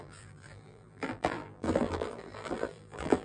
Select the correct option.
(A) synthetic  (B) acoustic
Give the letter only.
A